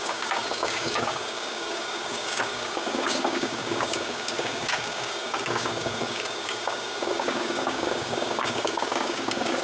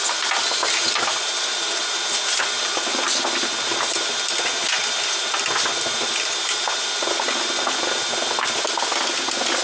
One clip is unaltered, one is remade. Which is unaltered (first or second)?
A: second